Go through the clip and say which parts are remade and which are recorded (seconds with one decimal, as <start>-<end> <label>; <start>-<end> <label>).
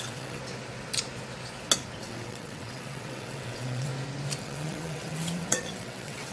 0.0-0.4 remade; 0.4-2.0 recorded; 2.0-3.9 remade; 3.9-4.4 recorded; 4.4-6.3 remade